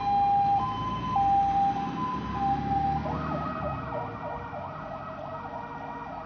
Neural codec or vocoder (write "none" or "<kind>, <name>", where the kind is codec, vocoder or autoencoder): none